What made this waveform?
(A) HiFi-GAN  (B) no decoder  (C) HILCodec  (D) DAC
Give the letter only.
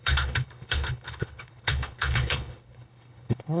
C